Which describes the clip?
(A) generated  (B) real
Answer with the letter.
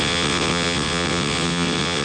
A